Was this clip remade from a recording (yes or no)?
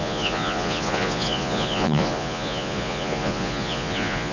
yes